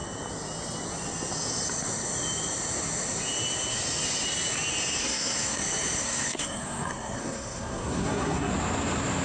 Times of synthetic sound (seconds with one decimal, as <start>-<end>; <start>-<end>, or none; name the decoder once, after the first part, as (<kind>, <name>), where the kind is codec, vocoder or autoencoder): 5.0-5.6 (codec, SNAC); 6.0-8.5